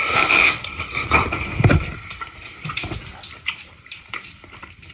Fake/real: fake